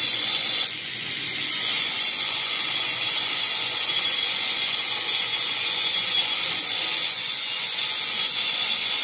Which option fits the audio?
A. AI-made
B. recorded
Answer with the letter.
A